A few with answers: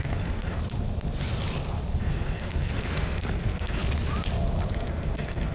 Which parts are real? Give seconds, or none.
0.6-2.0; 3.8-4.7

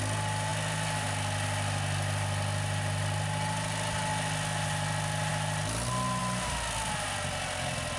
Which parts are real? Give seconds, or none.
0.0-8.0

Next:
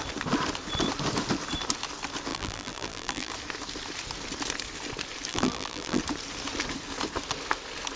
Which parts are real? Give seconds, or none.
0.0-2.3; 3.3-5.3; 6.0-8.0

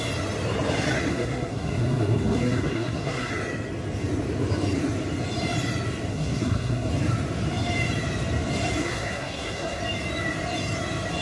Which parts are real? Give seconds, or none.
0.0-1.1; 3.3-6.1; 6.9-8.8; 9.8-11.2